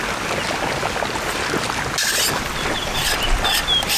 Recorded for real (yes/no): yes